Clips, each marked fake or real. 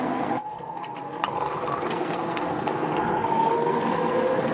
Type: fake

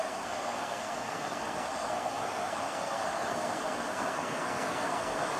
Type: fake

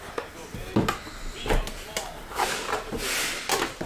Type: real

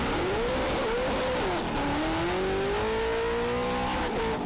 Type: real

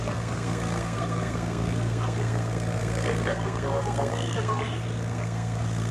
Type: fake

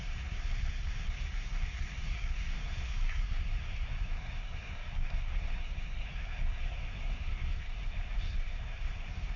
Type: fake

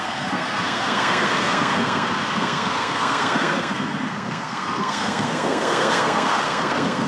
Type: fake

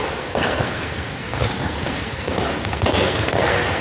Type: fake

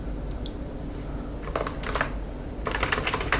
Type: real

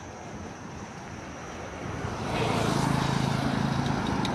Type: real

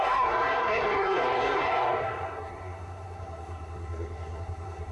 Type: fake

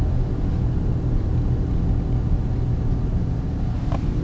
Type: real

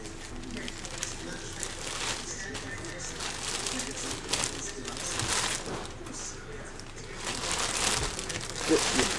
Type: real